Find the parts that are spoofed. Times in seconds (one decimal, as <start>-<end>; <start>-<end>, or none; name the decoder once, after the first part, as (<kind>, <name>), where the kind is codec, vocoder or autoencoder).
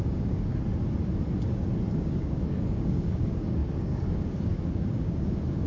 0.0-0.5 (codec, DAC); 1.9-5.7